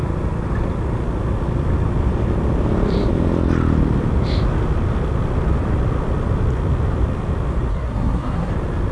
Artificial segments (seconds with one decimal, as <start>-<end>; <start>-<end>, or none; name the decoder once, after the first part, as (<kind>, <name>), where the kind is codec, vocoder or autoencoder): 7.7-8.5 (codec, SNAC)